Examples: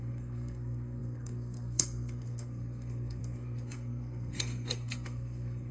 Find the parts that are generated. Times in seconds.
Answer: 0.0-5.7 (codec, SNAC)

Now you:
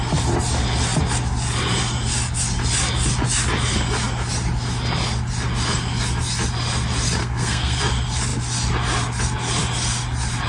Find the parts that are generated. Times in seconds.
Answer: 7.2-7.8 (codec, SNAC)

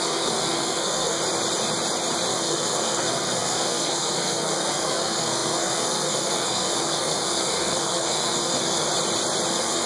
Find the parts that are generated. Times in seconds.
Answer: 0.0-1.2 (codec, SNAC); 2.3-8.9; 9.5-9.9